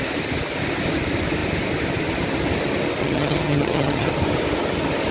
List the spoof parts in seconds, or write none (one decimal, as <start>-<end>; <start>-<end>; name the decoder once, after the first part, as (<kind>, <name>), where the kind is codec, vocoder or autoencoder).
3.0-4.1 (vocoder, HiFi-GAN)